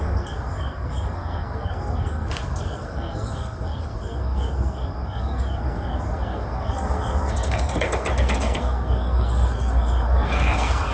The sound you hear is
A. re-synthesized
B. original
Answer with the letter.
A